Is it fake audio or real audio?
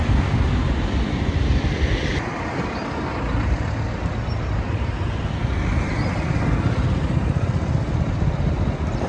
real